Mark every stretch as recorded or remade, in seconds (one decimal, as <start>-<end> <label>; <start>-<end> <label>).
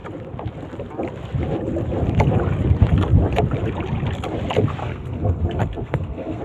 0.0-4.8 recorded; 4.8-6.4 remade